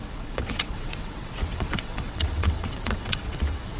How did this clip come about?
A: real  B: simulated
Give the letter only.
B